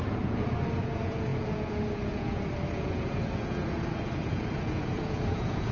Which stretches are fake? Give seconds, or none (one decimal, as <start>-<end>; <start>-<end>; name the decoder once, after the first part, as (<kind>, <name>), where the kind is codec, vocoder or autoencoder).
0.0-5.7 (vocoder, Vocos)